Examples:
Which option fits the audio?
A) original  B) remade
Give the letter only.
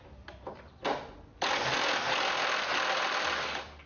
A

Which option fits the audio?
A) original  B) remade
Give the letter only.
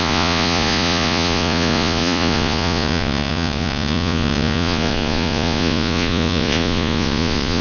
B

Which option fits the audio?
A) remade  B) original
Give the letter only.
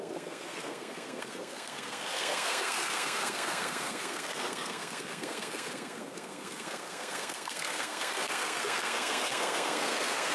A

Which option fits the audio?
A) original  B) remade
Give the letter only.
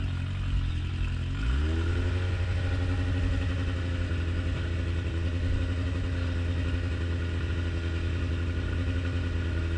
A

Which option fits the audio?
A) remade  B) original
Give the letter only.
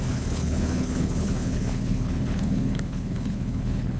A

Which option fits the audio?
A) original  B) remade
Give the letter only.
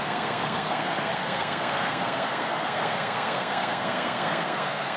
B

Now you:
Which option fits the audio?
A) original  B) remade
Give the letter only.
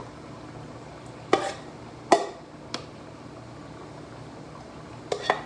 A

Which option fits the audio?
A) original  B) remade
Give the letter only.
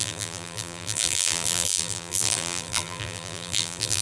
B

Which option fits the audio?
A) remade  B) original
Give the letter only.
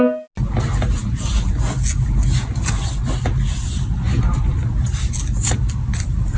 B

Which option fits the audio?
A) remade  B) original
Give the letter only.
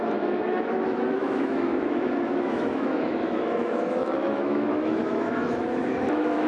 A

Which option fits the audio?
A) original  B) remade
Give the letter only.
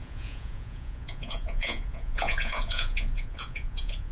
B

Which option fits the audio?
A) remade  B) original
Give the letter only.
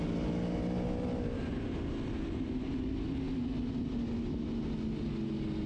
B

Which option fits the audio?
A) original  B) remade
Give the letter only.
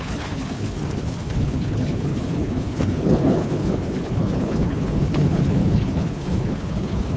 B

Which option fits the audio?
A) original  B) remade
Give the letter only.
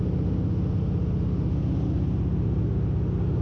A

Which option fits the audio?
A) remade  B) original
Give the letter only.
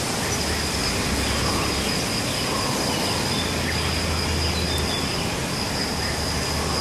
B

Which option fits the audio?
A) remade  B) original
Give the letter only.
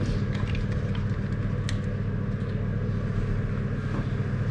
B